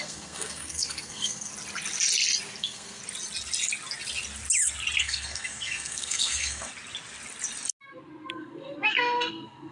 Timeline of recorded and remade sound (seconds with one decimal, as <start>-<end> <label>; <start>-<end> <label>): 0.0-1.5 remade; 1.5-2.6 recorded; 2.6-3.0 remade; 3.0-5.0 recorded; 5.0-6.7 remade; 6.7-8.3 recorded; 8.3-9.7 remade